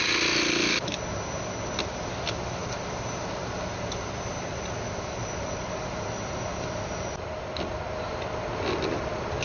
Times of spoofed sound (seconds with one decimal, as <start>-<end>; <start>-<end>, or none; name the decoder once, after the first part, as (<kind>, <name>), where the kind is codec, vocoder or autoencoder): none